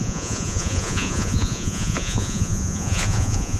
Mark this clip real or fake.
fake